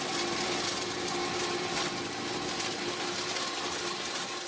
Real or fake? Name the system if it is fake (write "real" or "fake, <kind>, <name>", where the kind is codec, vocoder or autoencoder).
real